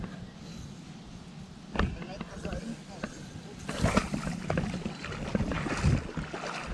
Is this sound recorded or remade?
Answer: recorded